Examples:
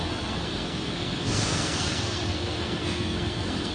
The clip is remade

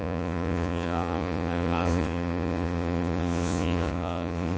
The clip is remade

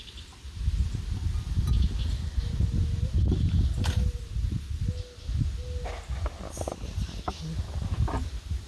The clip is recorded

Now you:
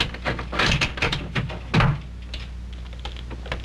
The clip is recorded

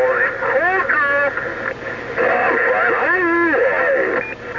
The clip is recorded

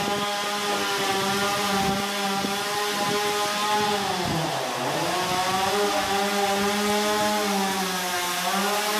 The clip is recorded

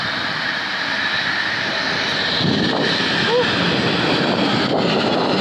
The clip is recorded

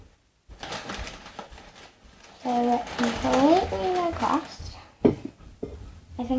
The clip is recorded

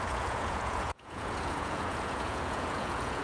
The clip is remade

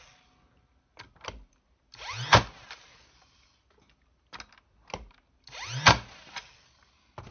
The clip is recorded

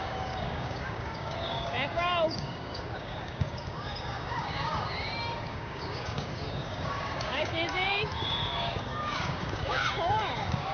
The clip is remade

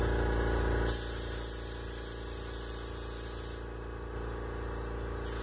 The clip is recorded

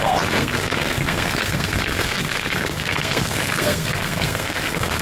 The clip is remade